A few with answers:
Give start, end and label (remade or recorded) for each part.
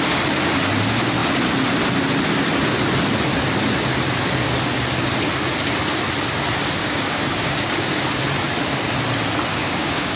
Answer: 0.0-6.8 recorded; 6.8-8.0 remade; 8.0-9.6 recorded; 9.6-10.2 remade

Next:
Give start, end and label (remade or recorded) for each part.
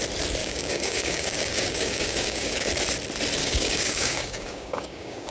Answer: 0.0-0.4 recorded; 0.4-2.7 remade; 2.7-3.4 recorded; 3.4-5.3 remade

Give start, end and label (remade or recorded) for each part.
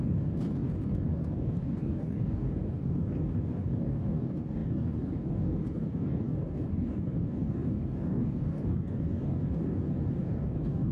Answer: 0.0-10.9 remade